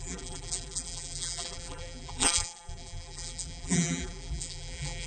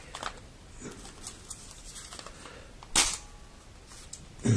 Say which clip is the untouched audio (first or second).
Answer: second